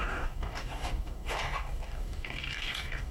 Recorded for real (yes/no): no